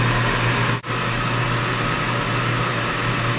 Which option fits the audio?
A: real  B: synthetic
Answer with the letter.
A